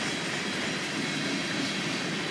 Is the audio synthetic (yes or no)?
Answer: no